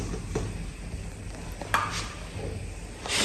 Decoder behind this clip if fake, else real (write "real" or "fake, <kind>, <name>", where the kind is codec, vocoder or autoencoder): real